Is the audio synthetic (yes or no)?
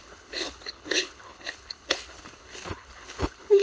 yes